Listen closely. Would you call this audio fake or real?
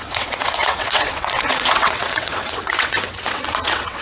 fake